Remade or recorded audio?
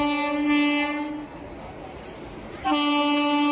recorded